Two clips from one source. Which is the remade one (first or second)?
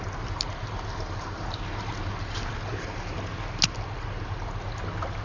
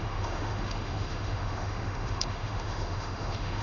second